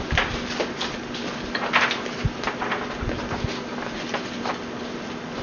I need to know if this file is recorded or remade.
recorded